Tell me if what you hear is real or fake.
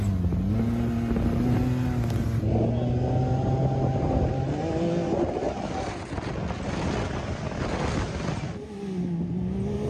real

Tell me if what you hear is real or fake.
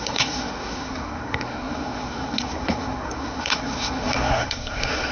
fake